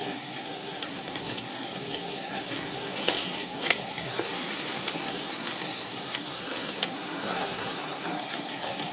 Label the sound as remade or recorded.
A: remade